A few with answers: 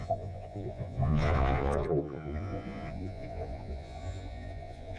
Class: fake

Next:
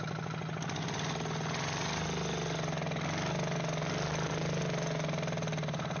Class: real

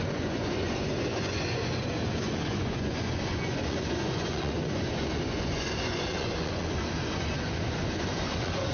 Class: fake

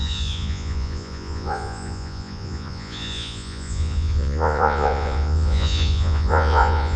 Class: fake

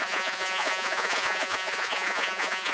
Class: fake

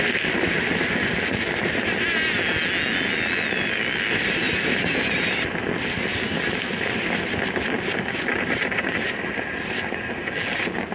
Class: real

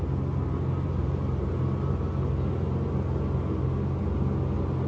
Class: real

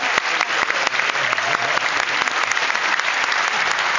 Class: real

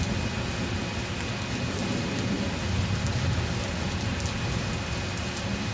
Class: real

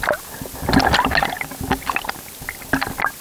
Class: real